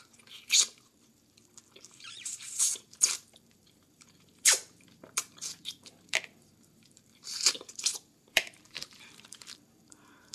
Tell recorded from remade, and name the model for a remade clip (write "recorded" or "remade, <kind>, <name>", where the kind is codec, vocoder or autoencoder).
remade, vocoder, BigVGAN v2